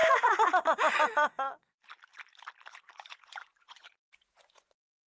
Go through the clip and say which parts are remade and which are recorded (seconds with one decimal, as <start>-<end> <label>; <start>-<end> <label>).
0.0-2.7 recorded; 2.7-5.1 remade